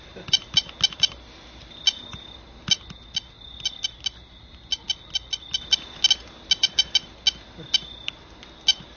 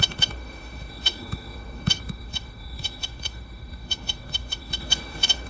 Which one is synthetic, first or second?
second